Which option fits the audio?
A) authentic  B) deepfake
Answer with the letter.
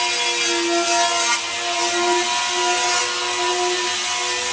A